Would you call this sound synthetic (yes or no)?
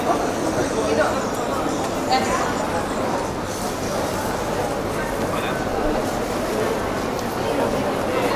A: no